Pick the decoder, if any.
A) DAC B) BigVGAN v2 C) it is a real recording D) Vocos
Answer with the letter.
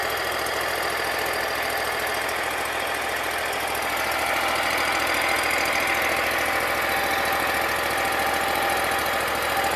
C